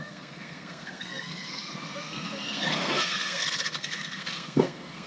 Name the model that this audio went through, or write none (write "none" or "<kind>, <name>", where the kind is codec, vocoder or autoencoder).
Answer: codec, SNAC